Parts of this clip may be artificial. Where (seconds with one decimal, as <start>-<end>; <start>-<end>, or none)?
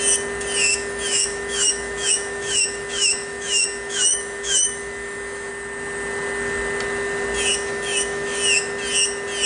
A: 0.7-5.5; 7.5-8.4